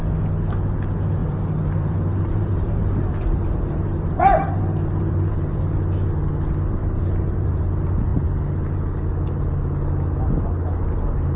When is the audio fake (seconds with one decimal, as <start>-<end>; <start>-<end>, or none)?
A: 1.2-5.6; 6.8-7.5